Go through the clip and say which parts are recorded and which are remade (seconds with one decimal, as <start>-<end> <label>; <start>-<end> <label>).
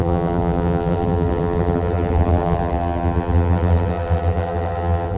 0.0-5.2 remade